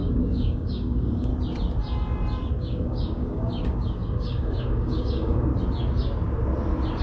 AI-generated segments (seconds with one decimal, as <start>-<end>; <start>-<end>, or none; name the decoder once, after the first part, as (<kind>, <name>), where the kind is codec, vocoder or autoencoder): 0.0-1.3 (codec, DAC); 2.5-5.5